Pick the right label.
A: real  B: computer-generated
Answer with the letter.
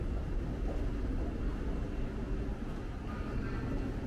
A